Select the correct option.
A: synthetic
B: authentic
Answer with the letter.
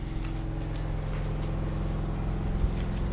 B